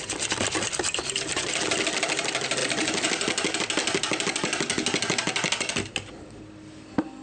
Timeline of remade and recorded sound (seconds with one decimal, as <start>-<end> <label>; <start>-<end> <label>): 0.0-7.2 recorded